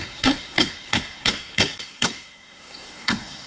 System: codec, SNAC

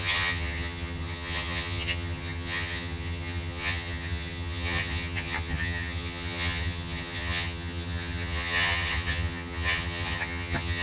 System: vocoder, HiFi-GAN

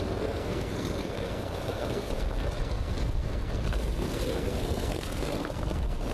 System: codec, SNAC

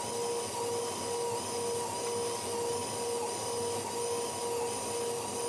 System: none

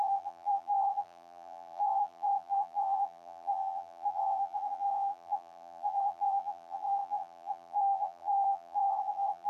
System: vocoder, BigVGAN v2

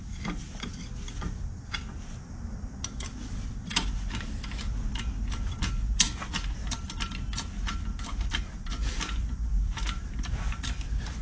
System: none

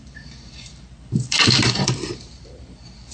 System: vocoder, BigVGAN v2